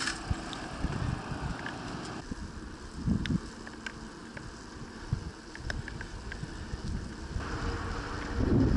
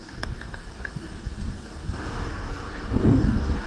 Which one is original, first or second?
first